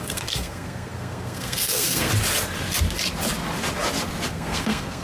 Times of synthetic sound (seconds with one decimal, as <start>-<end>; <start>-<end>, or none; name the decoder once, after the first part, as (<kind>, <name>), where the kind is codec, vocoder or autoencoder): 0.0-2.1 (codec, SNAC); 4.3-5.0